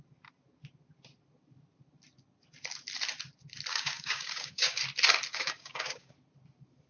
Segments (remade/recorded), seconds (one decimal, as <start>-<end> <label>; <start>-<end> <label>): 0.0-3.7 recorded; 3.7-4.8 remade; 4.8-5.3 recorded; 5.3-6.1 remade; 6.1-6.9 recorded